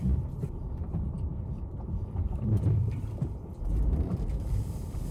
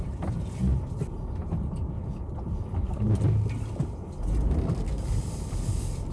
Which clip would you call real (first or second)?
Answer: second